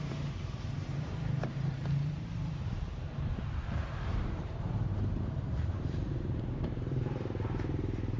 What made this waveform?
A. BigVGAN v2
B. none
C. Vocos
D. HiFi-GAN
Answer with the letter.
A